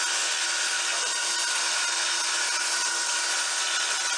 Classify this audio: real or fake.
real